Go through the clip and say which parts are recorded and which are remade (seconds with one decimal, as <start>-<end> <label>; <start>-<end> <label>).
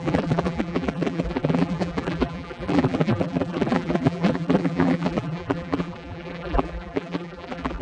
0.0-7.8 remade